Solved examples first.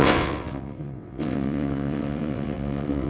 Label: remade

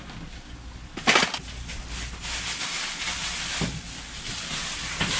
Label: recorded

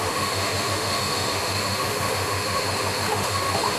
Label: remade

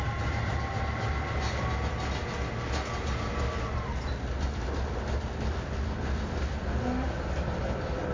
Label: recorded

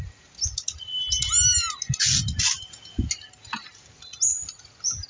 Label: recorded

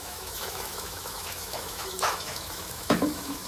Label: remade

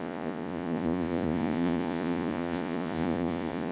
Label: remade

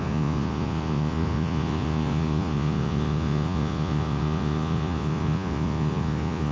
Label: remade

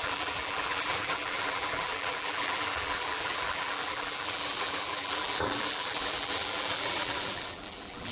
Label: remade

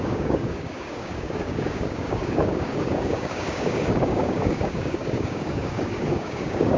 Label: remade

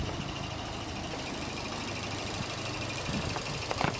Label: recorded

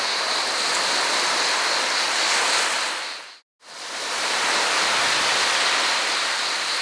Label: recorded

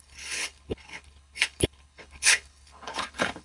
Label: remade